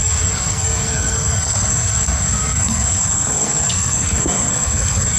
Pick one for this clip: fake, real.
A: fake